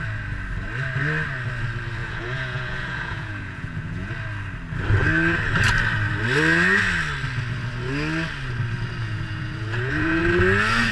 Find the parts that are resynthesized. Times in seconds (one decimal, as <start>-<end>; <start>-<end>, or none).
2.0-4.1; 9.0-10.2